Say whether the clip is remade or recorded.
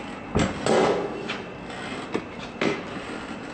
recorded